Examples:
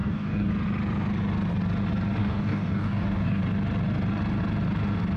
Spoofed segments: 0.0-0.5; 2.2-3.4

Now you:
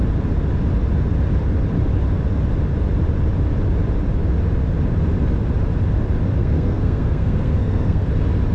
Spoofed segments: 6.4-8.1